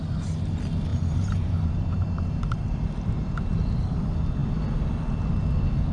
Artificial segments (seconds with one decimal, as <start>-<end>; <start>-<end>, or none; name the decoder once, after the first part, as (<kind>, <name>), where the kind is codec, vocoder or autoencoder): 0.9-4.0 (vocoder, BigVGAN v2)